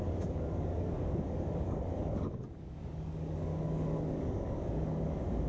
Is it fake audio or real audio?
fake